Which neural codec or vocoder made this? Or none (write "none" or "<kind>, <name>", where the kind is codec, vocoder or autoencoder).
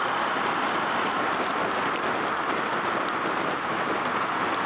none